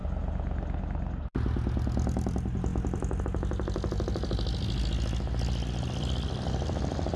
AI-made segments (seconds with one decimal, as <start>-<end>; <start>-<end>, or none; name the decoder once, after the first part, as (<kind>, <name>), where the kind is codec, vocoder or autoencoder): 2.7-3.2 (vocoder, BigVGAN v2)